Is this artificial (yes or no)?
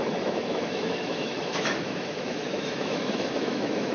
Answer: yes